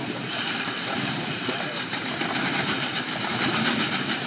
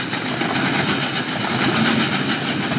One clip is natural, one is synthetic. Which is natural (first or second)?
second